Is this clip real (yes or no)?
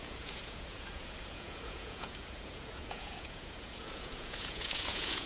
no